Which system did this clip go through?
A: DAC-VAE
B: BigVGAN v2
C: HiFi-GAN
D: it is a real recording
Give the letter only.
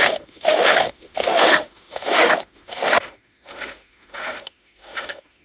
A